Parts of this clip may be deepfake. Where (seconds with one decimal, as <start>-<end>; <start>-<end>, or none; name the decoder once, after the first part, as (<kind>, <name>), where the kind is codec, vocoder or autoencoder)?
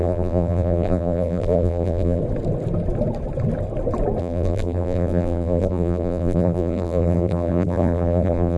0.0-2.2 (vocoder, BigVGAN v2); 4.2-8.6